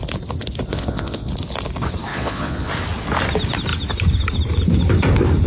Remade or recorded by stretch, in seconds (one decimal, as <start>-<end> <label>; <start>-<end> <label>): 0.0-0.7 recorded; 0.7-1.3 remade; 1.3-2.1 recorded; 2.1-2.7 remade; 2.7-5.5 recorded